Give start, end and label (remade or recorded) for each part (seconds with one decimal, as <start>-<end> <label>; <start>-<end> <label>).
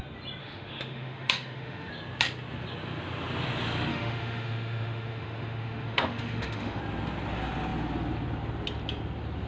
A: 0.0-0.4 recorded; 0.4-1.9 remade; 1.9-3.9 recorded; 3.9-6.8 remade; 6.8-9.5 recorded